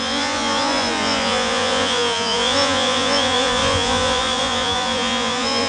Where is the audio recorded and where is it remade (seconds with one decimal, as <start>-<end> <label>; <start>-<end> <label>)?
0.0-5.7 remade